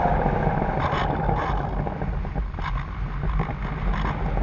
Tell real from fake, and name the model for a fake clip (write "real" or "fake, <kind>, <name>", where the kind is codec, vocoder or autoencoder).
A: real